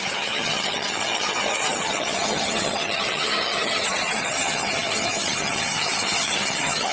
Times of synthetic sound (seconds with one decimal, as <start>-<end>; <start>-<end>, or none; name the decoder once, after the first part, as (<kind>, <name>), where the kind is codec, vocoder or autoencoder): 0.0-6.9 (vocoder, HiFi-GAN)